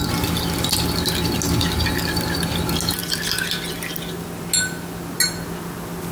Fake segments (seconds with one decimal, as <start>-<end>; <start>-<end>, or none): none